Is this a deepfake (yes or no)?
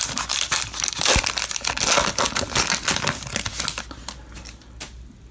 no